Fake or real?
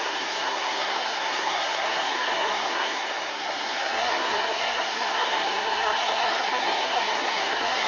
fake